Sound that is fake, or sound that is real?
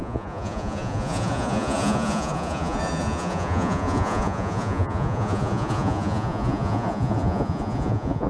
fake